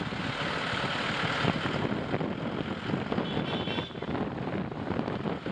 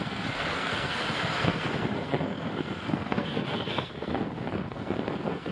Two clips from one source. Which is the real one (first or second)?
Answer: first